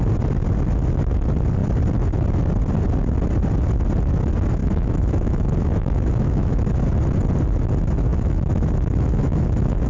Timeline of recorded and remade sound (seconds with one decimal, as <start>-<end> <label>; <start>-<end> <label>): 0.0-4.6 recorded; 4.6-6.7 remade; 6.7-8.1 recorded; 8.1-9.9 remade